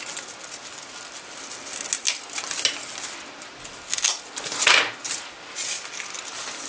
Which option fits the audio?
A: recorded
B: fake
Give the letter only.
A